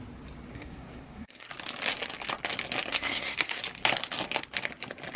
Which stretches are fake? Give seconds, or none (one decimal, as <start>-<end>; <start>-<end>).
0.5-1.5; 2.9-3.6